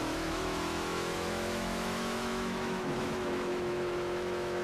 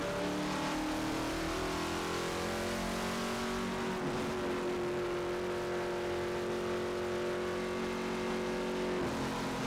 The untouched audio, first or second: second